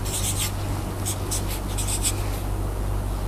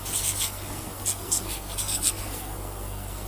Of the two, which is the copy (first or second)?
second